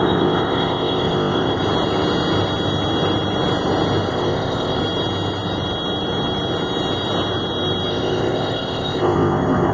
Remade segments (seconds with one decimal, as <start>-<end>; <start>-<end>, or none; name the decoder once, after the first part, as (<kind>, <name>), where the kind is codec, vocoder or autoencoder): 0.0-1.6 (codec, ZipCodec); 4.1-4.8; 7.9-9.7